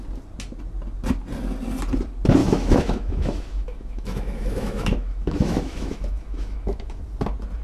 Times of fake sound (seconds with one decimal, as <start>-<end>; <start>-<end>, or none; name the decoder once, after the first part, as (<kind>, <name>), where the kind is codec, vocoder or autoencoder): 2.4-7.0 (autoencoder, DAC-VAE)